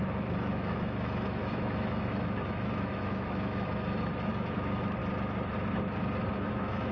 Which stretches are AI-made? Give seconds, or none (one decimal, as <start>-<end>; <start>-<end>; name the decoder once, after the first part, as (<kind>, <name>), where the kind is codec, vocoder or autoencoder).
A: 0.0-5.0 (autoencoder, DAC-VAE); 6.5-6.9